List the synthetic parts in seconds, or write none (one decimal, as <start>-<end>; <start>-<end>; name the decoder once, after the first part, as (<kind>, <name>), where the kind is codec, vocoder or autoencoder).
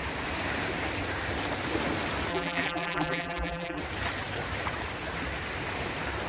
2.3-3.8 (vocoder, BigVGAN v2)